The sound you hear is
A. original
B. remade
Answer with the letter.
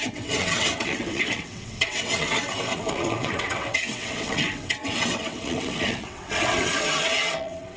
B